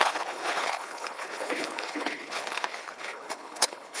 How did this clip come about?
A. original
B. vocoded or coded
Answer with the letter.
B